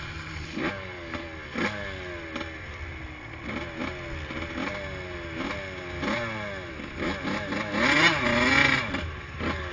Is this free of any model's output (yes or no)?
yes